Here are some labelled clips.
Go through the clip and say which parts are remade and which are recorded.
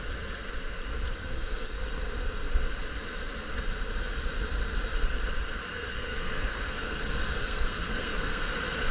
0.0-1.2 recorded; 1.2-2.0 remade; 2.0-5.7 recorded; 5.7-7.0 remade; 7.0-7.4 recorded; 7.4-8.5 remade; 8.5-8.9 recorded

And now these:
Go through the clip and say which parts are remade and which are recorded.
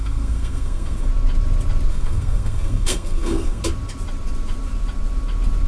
0.0-1.1 remade; 1.1-1.9 recorded; 1.9-3.6 remade; 3.6-5.7 recorded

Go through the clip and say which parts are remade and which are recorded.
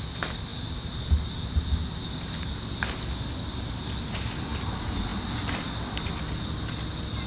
0.0-7.3 recorded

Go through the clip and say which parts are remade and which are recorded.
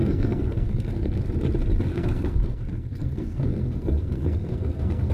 0.0-1.2 remade; 1.2-1.9 recorded; 1.9-5.1 remade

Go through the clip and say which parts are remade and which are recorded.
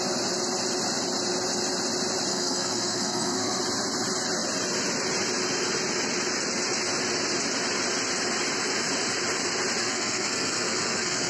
0.0-2.3 recorded; 2.3-3.6 remade; 3.6-9.8 recorded; 9.8-11.3 remade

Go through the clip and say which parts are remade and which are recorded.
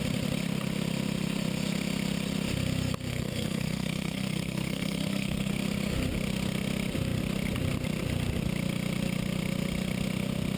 0.0-3.1 recorded; 3.1-5.5 remade; 5.5-10.6 recorded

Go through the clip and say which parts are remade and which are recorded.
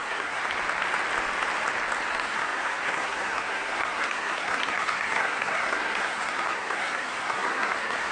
0.0-0.4 remade; 0.4-2.1 recorded; 2.1-8.1 remade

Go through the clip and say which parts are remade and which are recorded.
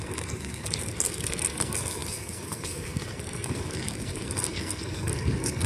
0.0-5.7 remade